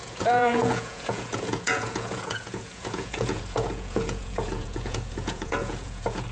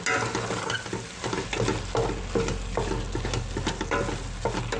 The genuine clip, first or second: second